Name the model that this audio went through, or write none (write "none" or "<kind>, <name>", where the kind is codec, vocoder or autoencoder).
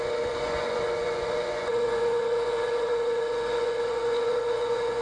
vocoder, Vocos